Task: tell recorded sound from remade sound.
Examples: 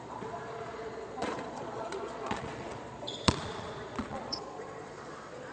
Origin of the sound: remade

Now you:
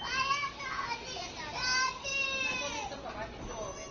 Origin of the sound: recorded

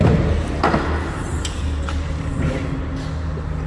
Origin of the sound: recorded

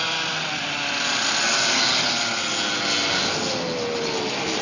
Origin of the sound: recorded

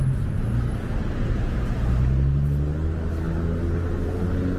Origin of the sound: recorded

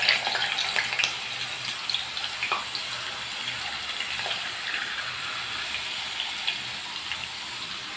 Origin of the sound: recorded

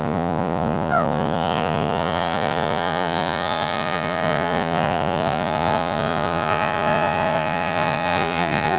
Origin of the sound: remade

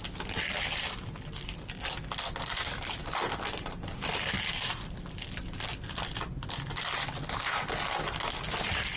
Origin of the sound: recorded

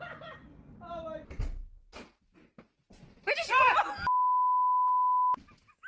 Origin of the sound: recorded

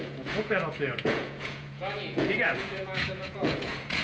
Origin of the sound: remade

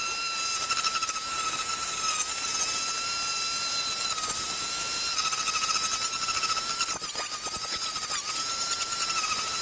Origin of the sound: recorded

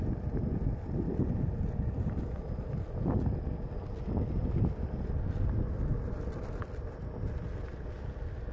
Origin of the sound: recorded